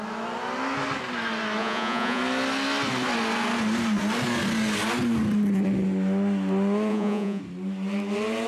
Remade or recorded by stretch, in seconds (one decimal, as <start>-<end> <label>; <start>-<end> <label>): 0.0-1.6 recorded; 1.6-2.2 remade; 2.2-6.9 recorded; 6.9-7.4 remade; 7.4-8.5 recorded